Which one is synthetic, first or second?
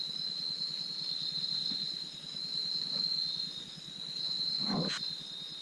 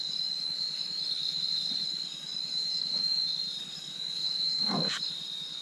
second